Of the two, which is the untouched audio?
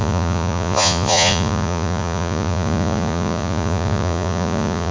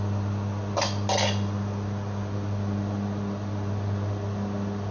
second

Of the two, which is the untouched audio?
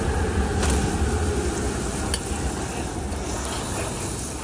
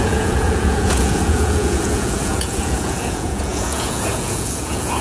first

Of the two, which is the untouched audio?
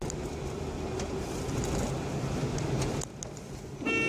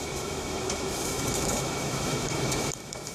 first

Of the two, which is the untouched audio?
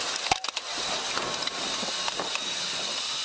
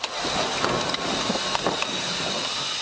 second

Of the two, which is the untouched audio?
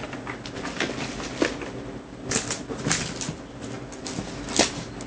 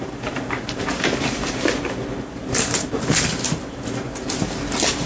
first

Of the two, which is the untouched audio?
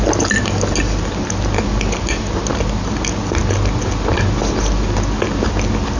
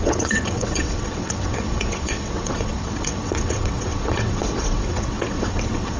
first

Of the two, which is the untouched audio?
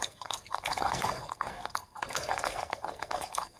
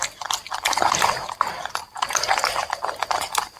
second